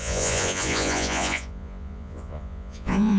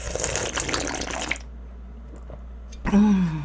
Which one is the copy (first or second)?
first